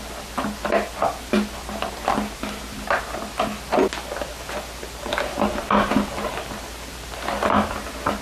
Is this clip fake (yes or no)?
no